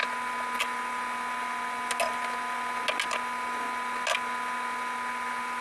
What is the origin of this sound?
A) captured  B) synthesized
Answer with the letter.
A